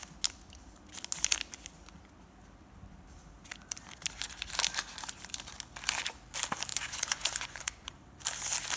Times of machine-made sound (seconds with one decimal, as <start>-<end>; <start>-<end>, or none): 6.7-7.9